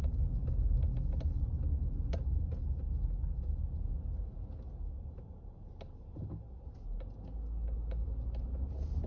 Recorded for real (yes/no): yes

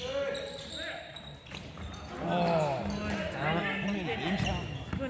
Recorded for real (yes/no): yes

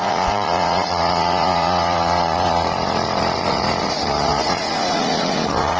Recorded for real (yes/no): no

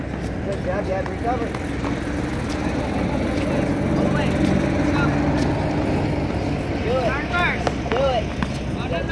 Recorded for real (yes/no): yes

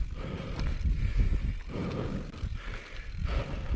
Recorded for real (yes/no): yes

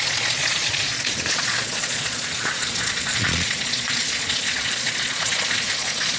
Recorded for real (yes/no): no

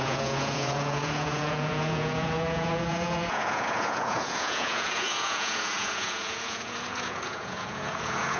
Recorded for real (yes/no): no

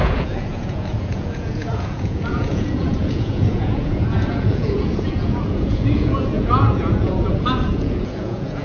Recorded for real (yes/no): no